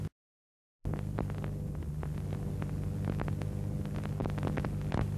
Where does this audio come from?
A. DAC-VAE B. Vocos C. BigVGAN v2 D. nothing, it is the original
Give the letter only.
D